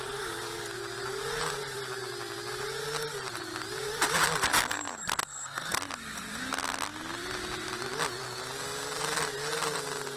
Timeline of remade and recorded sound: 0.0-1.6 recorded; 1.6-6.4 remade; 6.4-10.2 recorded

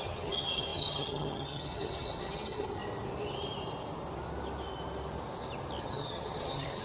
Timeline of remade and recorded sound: 0.0-2.8 remade; 2.8-5.8 recorded; 5.8-6.8 remade

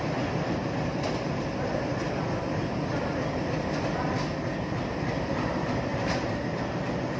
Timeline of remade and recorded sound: 0.0-5.9 recorded; 5.9-6.6 remade; 6.6-7.2 recorded

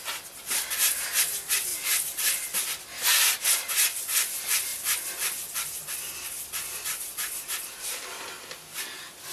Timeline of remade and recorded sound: 0.0-1.7 recorded; 1.7-2.8 remade; 2.8-4.7 recorded; 4.7-8.2 remade; 8.2-9.3 recorded

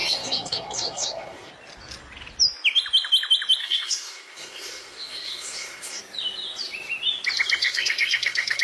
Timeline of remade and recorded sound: 0.0-1.5 remade; 1.5-3.6 recorded; 3.6-6.0 remade; 6.0-7.6 recorded; 7.6-8.6 remade